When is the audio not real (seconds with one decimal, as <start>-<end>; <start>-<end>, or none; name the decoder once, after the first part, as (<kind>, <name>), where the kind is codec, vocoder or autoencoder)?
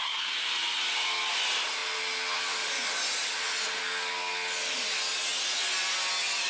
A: none